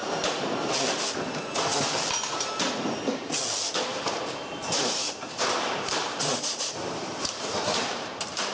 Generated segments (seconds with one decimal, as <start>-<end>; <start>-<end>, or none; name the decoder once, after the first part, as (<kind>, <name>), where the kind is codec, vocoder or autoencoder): 3.9-8.5 (vocoder, BigVGAN v2)